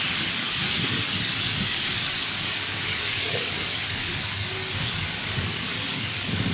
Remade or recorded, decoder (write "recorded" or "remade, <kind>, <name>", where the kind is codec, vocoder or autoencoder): remade, codec, DAC